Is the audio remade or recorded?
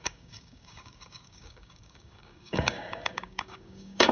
remade